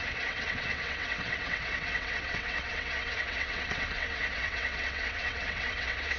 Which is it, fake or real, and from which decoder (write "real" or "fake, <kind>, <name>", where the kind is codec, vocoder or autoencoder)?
fake, vocoder, WaveNeXt